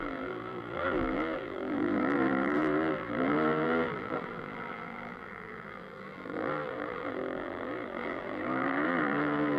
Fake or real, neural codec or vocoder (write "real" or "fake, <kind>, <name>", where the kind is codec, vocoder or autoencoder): fake, vocoder, BigVGAN v2